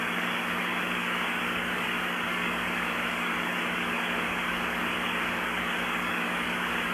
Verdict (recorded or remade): remade